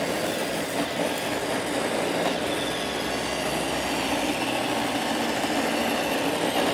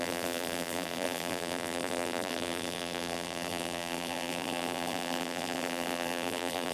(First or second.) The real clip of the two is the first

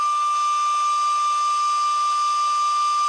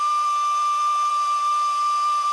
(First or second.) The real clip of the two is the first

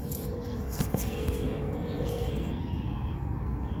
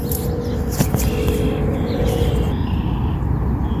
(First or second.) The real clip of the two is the second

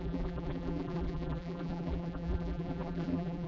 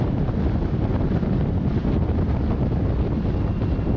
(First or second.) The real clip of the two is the second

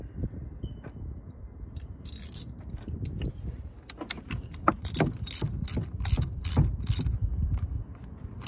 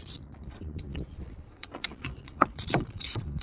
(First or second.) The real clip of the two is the first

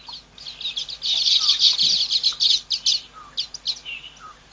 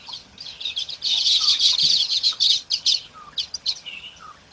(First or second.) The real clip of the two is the first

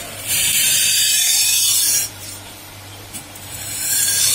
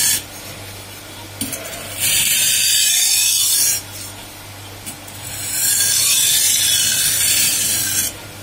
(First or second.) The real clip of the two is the second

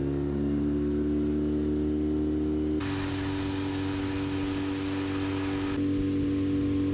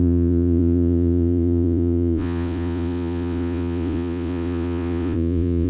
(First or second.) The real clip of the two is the first